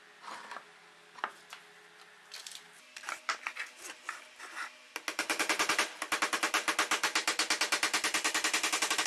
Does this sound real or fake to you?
real